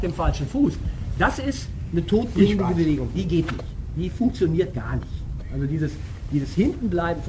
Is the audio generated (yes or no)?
no